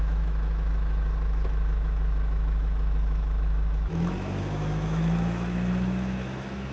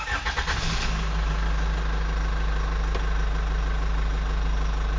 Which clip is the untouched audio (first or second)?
second